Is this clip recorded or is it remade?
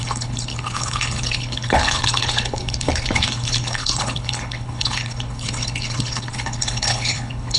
remade